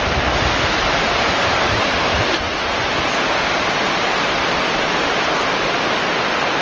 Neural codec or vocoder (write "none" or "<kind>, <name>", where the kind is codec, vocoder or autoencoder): none